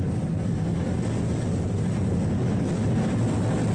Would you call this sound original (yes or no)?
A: yes